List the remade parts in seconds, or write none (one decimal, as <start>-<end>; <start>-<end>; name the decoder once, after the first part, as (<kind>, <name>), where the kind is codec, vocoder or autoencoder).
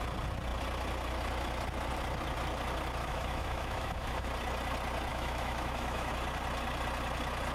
3.0-4.3 (autoencoder, DAC-VAE); 5.1-6.1